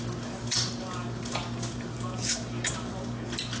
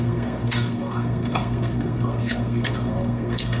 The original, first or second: first